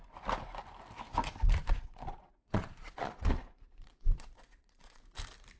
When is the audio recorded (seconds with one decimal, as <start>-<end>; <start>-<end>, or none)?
0.0-1.6; 5.0-5.6